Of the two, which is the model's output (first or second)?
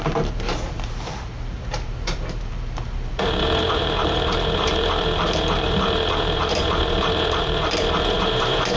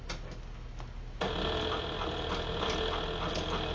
first